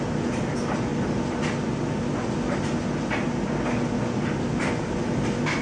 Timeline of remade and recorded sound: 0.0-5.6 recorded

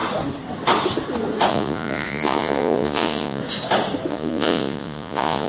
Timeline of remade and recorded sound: 0.0-1.5 recorded; 1.5-3.4 remade; 3.4-4.1 recorded; 4.1-5.5 remade

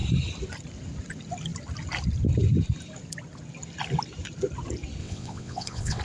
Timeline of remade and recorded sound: 0.0-5.0 recorded; 5.0-6.0 remade

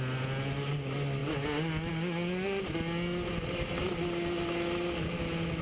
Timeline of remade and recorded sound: 0.0-5.6 recorded